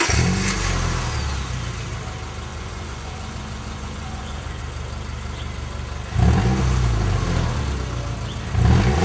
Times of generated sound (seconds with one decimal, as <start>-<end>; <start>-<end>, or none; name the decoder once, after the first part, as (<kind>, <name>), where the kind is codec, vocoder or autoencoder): 2.5-4.6 (vocoder, Vocos)